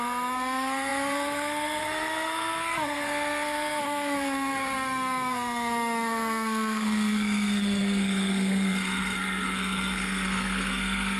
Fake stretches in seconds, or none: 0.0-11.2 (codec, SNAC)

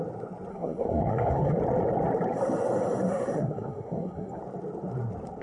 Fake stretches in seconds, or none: 0.5-1.6 (codec, SNAC); 3.1-4.4